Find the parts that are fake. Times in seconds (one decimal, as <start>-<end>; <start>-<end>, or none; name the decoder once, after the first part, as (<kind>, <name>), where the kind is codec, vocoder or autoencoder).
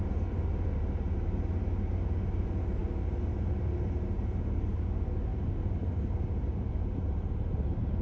none